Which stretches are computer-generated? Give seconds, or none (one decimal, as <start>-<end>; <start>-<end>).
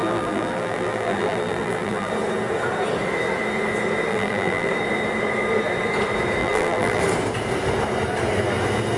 0.0-2.1; 4.1-4.7; 6.4-7.0